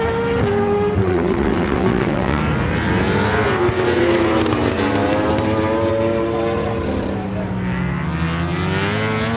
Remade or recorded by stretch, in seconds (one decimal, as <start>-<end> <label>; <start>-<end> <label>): 0.0-1.0 recorded; 1.0-2.4 remade; 2.4-9.4 recorded